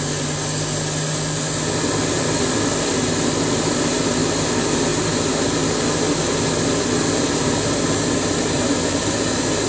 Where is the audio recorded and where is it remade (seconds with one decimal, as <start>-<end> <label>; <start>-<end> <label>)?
0.0-9.7 recorded